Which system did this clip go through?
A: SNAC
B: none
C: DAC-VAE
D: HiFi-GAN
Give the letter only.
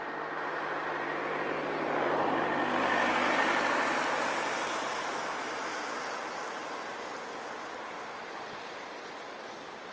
B